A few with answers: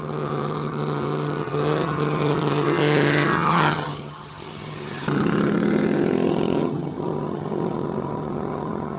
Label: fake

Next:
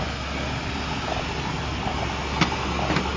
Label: real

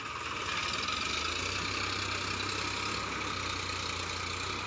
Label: real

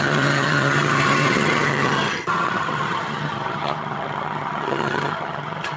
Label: fake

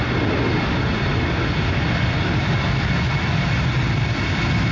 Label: real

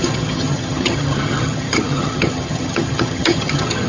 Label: fake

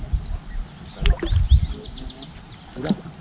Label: real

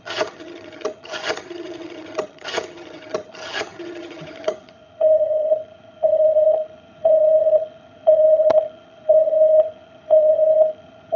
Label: fake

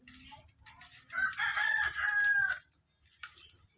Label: real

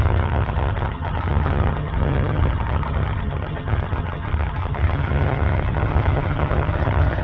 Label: fake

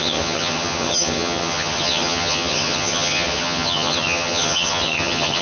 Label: fake